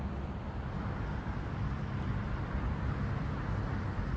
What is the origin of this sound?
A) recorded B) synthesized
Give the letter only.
B